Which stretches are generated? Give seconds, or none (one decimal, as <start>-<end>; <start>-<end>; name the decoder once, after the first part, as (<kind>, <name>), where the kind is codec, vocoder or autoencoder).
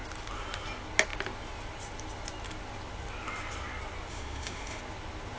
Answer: 4.1-4.8 (autoencoder, DAC-VAE)